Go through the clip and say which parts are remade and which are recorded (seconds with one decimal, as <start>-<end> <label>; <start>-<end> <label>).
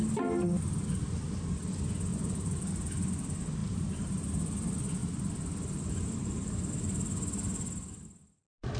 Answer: 0.0-2.1 recorded; 2.1-2.7 remade; 2.7-3.6 recorded; 3.6-4.4 remade; 4.4-5.0 recorded; 5.0-6.7 remade; 6.7-8.8 recorded